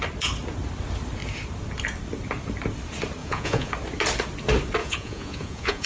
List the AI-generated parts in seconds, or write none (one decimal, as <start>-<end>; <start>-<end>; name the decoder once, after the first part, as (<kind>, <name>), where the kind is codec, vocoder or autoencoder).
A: 3.2-3.7 (vocoder, Vocos); 4.8-5.9